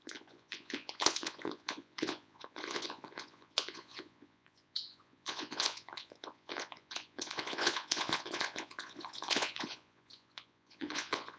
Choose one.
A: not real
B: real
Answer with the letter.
A